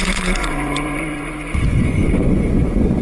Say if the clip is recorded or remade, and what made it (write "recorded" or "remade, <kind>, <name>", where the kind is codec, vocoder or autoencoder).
remade, vocoder, Vocos